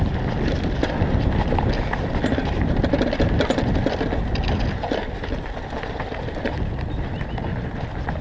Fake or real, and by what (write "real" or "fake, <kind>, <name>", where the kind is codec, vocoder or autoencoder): real